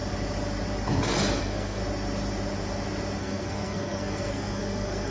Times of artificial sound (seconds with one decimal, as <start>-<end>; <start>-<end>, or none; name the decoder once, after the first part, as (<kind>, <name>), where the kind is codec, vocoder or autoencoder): 1.4-1.8 (codec, SNAC); 3.2-5.1